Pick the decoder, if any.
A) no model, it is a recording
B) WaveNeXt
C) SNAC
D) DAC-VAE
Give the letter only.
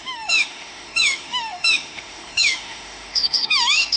D